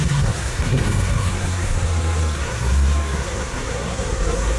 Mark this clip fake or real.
fake